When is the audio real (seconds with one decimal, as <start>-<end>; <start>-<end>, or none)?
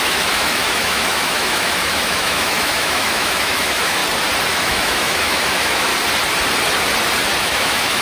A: 4.0-4.5; 5.9-7.4